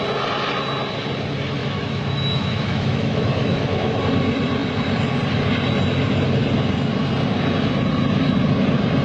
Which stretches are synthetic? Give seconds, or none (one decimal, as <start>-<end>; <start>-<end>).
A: 1.6-4.0